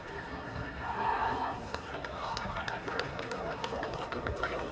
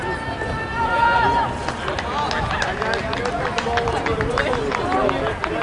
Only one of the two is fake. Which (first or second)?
first